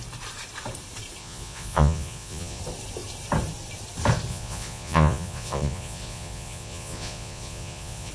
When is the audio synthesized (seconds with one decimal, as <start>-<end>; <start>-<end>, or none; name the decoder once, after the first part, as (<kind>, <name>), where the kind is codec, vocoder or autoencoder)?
1.2-2.6 (vocoder, Vocos); 4.3-8.1